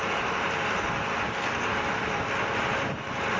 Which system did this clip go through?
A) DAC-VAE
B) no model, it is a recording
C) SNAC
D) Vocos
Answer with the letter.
B